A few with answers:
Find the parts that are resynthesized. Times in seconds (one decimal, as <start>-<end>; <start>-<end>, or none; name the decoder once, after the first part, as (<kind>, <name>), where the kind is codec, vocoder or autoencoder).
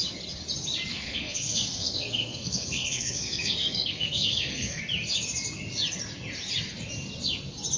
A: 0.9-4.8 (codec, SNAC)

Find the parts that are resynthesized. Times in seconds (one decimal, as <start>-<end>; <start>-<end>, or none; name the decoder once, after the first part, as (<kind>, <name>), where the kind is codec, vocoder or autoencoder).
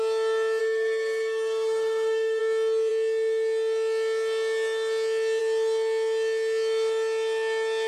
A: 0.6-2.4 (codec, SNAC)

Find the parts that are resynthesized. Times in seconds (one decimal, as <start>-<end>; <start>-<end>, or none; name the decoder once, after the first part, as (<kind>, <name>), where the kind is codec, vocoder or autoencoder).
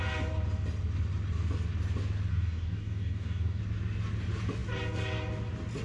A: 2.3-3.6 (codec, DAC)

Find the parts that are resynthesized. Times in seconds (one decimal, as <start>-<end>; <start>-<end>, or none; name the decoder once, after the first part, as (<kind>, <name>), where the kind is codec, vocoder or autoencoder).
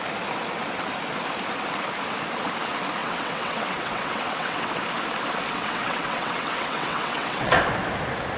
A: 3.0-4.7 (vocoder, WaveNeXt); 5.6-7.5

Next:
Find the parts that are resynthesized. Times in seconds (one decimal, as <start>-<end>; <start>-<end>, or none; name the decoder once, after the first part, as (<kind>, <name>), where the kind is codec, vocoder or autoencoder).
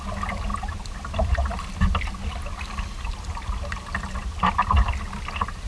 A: none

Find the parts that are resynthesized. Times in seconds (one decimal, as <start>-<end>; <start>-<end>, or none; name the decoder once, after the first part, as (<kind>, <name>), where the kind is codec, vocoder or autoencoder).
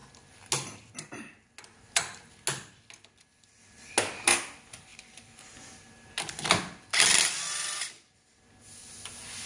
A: 4.9-7.2 (vocoder, BigVGAN v2)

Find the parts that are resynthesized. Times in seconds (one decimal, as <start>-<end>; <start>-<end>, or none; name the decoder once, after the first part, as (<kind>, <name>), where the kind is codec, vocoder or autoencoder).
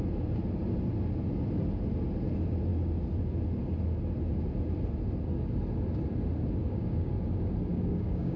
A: 6.6-7.1 (codec, DAC); 7.7-8.4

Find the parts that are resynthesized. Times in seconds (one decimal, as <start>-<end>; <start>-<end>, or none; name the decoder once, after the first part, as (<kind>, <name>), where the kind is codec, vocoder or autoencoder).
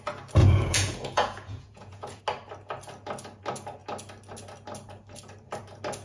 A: 0.4-2.2 (vocoder, Vocos)